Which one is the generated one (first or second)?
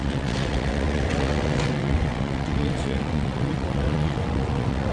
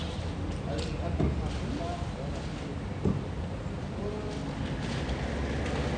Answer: first